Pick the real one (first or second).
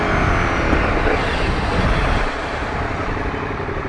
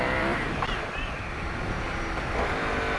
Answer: first